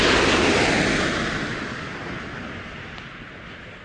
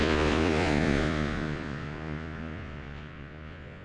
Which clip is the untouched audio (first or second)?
first